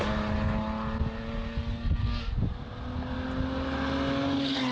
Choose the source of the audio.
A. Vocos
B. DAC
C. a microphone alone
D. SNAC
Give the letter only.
C